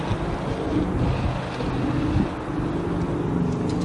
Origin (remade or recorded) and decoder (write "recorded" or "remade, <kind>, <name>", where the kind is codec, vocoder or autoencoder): recorded